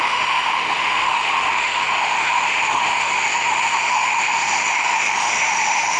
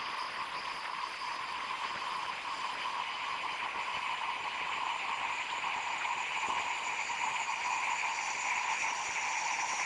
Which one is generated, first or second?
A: first